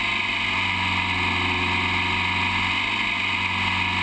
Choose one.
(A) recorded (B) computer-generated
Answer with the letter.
A